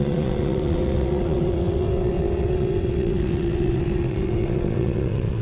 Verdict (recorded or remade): remade